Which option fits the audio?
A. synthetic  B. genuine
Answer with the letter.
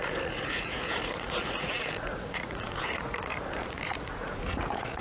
A